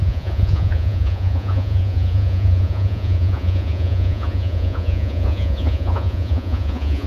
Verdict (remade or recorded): remade